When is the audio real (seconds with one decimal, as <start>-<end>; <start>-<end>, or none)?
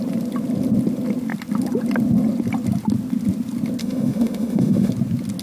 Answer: 0.0-3.8; 4.9-5.4